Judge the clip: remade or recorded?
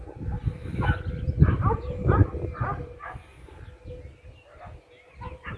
recorded